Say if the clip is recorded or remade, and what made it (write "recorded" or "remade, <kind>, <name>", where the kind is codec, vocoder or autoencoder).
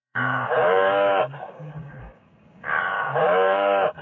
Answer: remade, codec, DAC